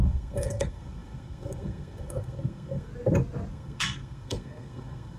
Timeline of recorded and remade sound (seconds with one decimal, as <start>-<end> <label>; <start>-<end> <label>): 0.0-2.9 remade; 2.9-3.5 recorded; 3.5-5.2 remade